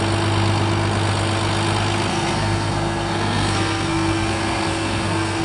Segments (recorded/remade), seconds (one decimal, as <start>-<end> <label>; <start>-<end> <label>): 0.0-2.1 recorded; 2.1-5.4 remade